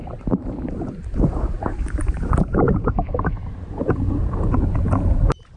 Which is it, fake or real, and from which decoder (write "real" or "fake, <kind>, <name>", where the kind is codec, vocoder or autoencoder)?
fake, vocoder, BigVGAN v2